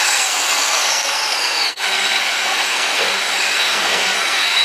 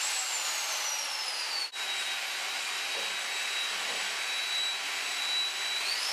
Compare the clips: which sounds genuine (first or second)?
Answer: second